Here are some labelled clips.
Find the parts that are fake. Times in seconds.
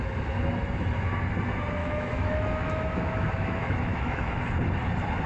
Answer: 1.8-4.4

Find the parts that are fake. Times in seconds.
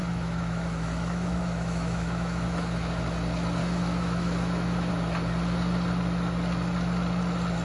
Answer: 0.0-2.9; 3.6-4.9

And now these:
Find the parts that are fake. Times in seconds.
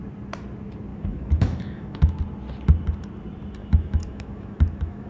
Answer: 0.9-2.2; 3.6-5.1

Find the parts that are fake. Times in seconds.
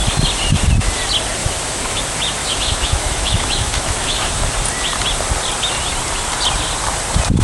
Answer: 1.4-2.0; 2.4-4.4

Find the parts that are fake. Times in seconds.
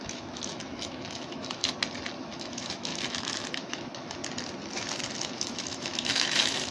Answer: 0.0-1.6; 2.2-4.2; 5.1-6.7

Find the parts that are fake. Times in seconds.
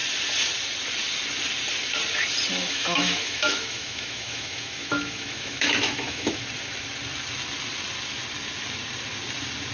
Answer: 2.6-6.4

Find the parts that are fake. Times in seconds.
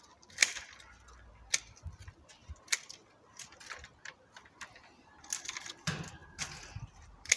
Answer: none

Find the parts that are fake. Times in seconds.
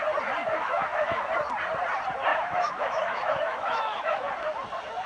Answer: 0.4-1.3; 2.3-4.3